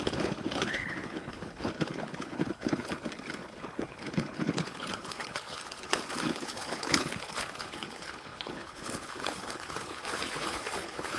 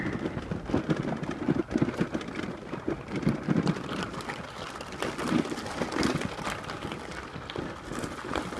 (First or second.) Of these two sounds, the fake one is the first